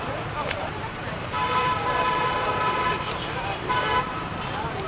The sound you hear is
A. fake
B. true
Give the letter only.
A